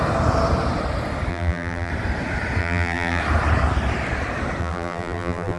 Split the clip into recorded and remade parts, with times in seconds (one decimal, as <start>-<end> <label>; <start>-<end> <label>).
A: 0.0-1.3 recorded; 1.3-1.9 remade; 1.9-2.6 recorded; 2.6-3.2 remade; 3.2-4.6 recorded; 4.6-5.6 remade